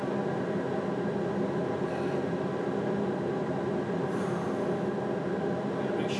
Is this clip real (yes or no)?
yes